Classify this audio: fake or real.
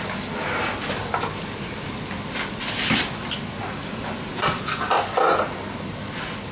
real